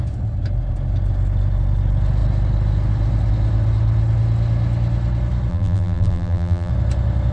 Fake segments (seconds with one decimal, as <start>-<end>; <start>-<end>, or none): 5.5-6.7